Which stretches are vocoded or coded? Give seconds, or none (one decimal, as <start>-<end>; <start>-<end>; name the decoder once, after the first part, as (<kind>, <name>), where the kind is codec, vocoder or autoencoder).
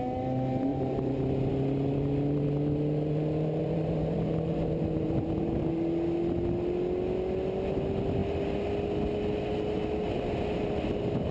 0.7-1.2 (vocoder, BigVGAN v2); 3.6-5.7